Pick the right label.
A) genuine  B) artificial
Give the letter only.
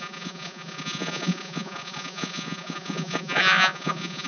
B